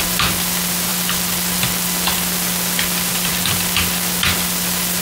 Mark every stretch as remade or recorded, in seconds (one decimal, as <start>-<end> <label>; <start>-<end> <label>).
0.0-5.0 recorded